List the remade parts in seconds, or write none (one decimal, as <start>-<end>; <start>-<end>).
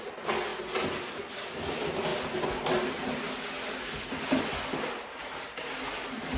none